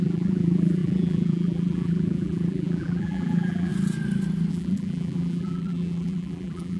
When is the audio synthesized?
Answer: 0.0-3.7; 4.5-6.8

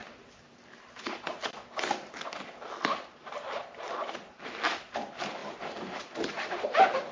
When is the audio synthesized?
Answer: 4.3-7.1

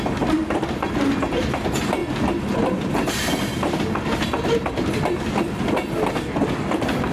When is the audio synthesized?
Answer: 0.0-0.4; 1.3-7.1

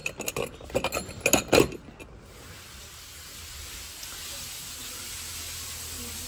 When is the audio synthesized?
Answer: none

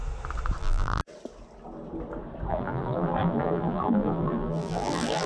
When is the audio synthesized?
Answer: 0.6-1.0; 2.5-5.3

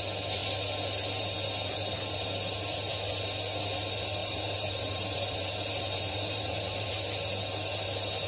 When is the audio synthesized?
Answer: 4.2-6.9

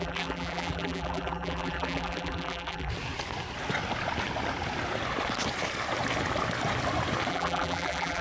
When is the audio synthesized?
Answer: 0.0-2.9; 7.3-8.2